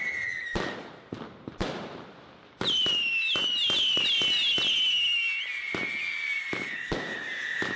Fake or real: real